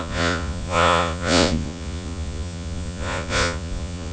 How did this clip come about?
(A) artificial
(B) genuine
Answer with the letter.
A